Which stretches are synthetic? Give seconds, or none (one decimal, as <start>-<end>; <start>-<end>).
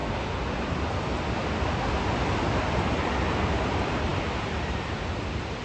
none